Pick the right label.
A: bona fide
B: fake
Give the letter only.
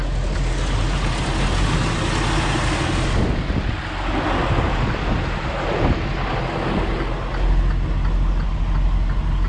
A